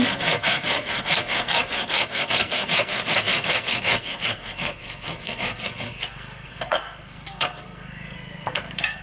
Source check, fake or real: fake